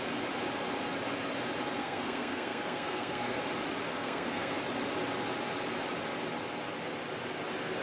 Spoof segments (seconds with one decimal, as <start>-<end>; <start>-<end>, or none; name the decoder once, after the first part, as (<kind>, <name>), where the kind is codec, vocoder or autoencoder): 1.8-3.4 (codec, SNAC); 3.9-4.6